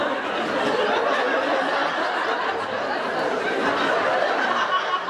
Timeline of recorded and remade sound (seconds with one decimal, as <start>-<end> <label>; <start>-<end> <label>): 0.0-5.1 recorded